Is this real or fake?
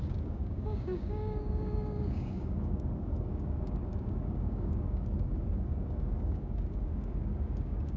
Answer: fake